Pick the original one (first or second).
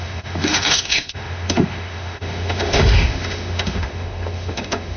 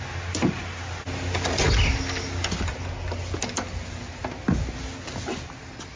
second